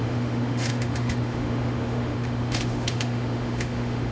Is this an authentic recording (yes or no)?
no